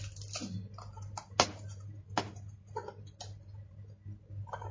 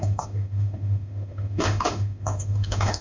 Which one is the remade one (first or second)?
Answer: second